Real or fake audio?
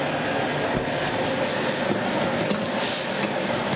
real